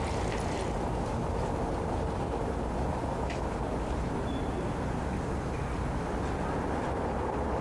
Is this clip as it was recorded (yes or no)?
yes